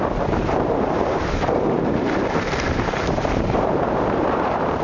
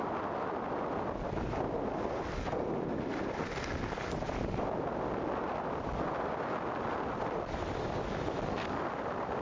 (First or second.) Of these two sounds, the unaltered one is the second